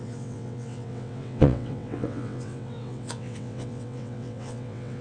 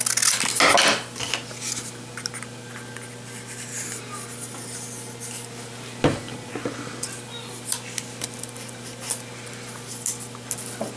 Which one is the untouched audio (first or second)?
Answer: second